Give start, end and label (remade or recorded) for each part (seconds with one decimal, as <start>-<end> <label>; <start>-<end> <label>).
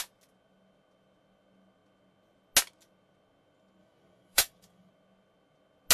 0.0-3.8 recorded; 3.8-4.9 remade; 4.9-5.9 recorded